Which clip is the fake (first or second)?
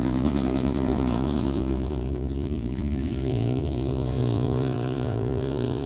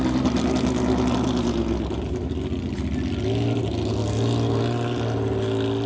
first